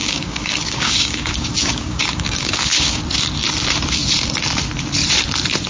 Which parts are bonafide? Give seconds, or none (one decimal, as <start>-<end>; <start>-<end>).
3.0-5.7